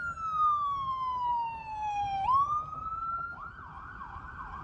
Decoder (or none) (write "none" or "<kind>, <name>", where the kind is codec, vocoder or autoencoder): vocoder, BigVGAN v2